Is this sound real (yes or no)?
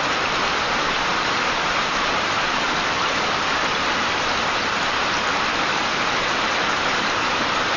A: no